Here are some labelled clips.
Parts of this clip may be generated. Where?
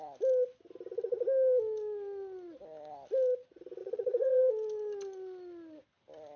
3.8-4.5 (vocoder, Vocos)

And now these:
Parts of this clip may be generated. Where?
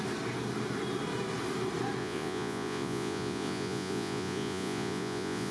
2.0-5.5 (vocoder, Vocos)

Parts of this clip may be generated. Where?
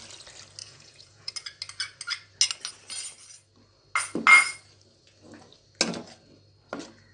0.6-1.3 (vocoder, Vocos)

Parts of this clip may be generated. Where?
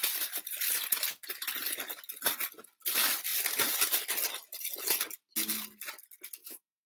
6.4-6.9 (vocoder, Vocos)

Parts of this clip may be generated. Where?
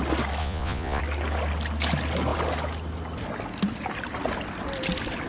0.4-1.0 (vocoder, Vocos)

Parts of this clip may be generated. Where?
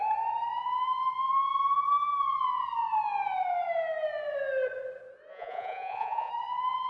5.3-6.3 (vocoder, Vocos)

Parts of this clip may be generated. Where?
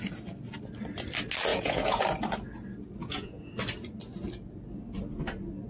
1.5-2.0 (vocoder, Vocos); 3.0-3.5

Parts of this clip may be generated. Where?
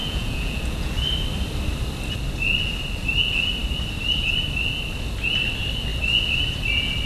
0.0-0.9 (vocoder, Vocos)